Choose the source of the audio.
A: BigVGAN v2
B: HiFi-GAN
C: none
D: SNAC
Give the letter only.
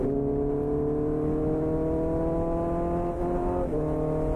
C